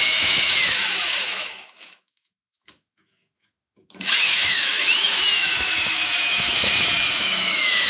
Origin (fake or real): fake